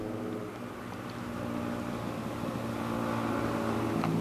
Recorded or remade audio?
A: recorded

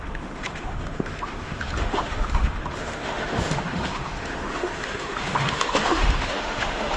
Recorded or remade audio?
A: remade